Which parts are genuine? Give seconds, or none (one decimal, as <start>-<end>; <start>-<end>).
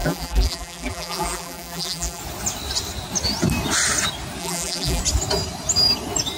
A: 2.2-4.4; 5.0-6.4